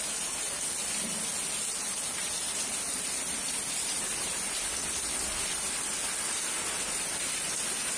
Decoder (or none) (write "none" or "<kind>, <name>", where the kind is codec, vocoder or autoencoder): none